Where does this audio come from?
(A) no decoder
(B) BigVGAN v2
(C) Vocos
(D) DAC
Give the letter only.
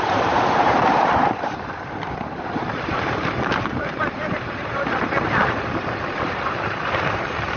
B